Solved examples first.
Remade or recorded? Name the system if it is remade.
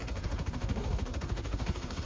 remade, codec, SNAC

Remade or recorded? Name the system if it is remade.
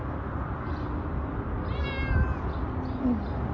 recorded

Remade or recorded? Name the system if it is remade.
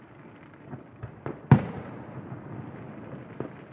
recorded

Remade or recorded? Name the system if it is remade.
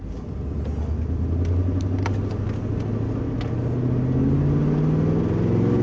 recorded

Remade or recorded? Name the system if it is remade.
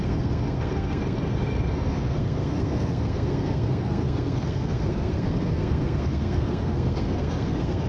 remade, codec, SNAC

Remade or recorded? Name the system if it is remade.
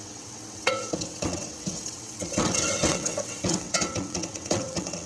remade, vocoder, WaveNeXt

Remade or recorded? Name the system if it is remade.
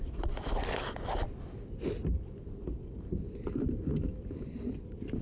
recorded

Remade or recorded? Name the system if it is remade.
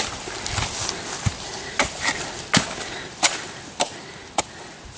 recorded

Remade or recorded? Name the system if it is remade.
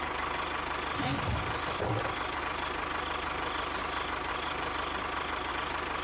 recorded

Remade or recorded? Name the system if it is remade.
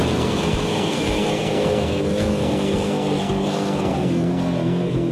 remade, codec, SNAC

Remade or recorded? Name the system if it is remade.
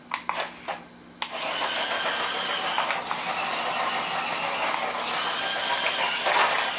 recorded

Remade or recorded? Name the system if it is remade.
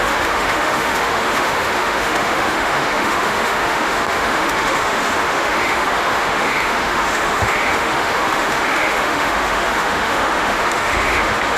remade, autoencoder, DAC-VAE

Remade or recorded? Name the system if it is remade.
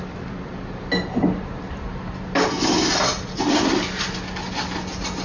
recorded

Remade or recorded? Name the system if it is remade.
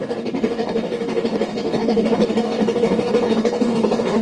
remade, codec, DAC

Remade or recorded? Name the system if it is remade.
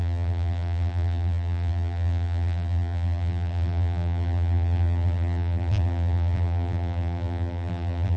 remade, vocoder, BigVGAN v2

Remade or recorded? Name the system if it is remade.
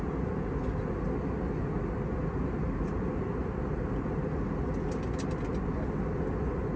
recorded